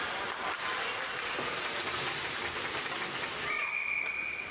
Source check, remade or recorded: recorded